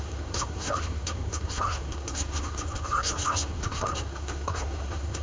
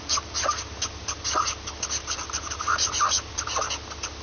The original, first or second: second